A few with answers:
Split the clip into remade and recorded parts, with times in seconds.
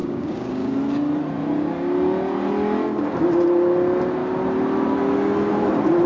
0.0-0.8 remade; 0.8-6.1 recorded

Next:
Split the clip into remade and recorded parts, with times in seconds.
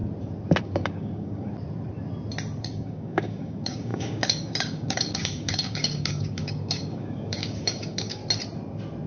0.0-0.6 recorded; 0.6-1.5 remade; 1.5-2.6 recorded; 2.6-8.2 remade; 8.2-9.1 recorded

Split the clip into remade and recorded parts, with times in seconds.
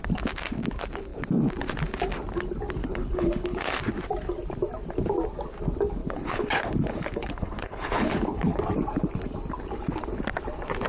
0.0-2.8 recorded; 2.8-3.8 remade; 3.8-6.0 recorded; 6.0-8.6 remade; 8.6-10.9 recorded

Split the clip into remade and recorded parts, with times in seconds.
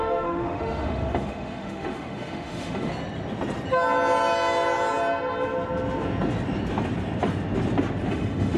0.0-2.9 remade; 2.9-8.1 recorded; 8.1-8.6 remade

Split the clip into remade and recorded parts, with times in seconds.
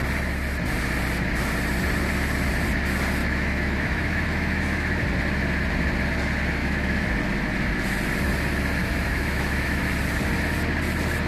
0.0-3.2 recorded; 3.2-5.0 remade; 5.0-6.6 recorded; 6.6-7.2 remade; 7.2-8.8 recorded; 8.8-9.8 remade; 9.8-11.3 recorded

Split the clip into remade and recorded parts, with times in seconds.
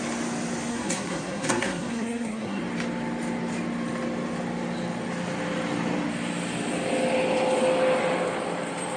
0.0-0.7 recorded; 0.7-2.6 remade; 2.6-9.0 recorded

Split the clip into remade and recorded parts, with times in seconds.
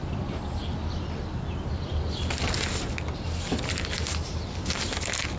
0.0-5.4 recorded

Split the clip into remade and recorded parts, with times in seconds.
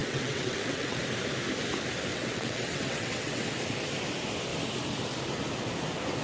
0.0-1.0 remade; 1.0-2.1 recorded; 2.1-3.5 remade; 3.5-6.2 recorded